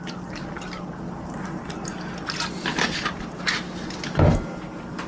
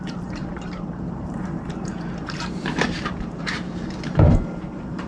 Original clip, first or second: first